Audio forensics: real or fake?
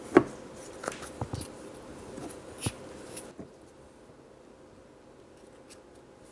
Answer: real